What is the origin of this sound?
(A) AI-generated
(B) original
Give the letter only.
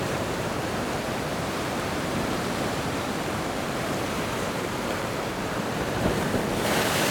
A